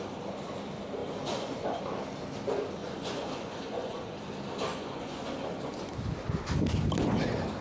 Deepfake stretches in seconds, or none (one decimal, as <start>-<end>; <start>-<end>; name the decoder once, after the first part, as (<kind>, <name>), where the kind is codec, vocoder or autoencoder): 1.0-1.8 (vocoder, Vocos); 2.8-4.2; 4.7-5.9